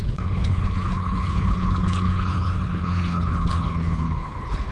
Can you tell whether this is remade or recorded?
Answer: remade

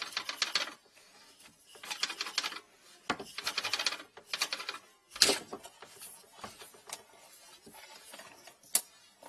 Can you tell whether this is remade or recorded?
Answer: recorded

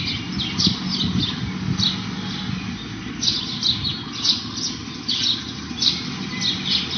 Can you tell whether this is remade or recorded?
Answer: recorded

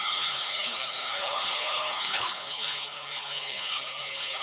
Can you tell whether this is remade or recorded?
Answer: remade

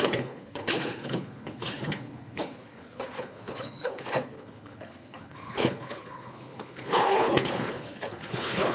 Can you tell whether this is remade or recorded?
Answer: remade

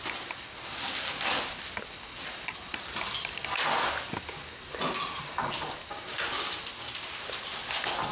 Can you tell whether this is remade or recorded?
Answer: recorded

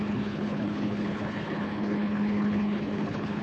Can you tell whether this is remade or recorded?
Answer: remade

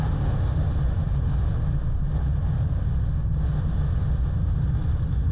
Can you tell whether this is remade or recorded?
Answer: recorded